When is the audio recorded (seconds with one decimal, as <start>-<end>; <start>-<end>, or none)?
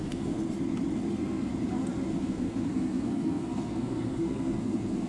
0.4-1.1; 1.5-2.2